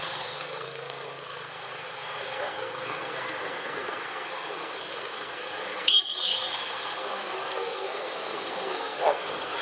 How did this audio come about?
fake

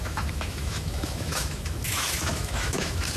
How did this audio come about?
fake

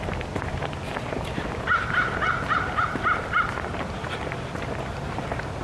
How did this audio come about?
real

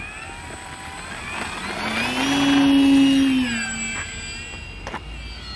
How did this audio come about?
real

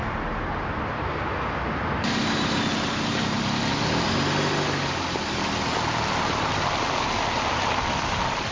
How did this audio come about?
real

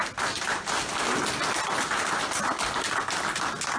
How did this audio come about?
real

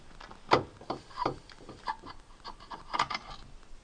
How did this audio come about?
real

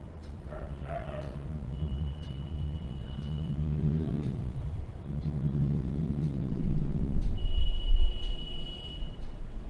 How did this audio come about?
fake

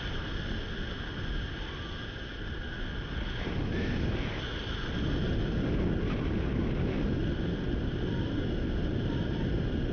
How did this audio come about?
real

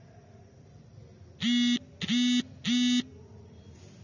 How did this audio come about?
real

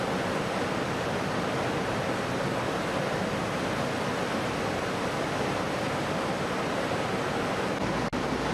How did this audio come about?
real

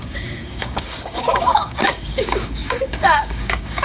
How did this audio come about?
fake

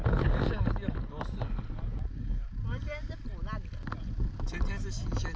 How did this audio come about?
real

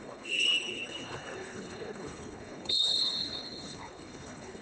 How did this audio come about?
fake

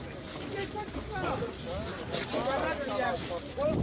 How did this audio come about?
real